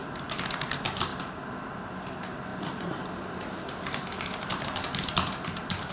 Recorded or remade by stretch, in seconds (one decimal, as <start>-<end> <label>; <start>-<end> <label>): 0.0-2.5 recorded; 2.5-5.9 remade